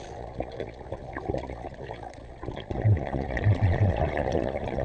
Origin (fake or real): fake